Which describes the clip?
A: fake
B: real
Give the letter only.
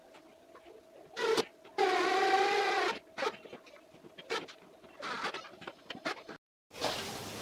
B